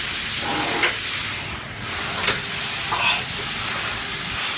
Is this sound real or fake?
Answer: real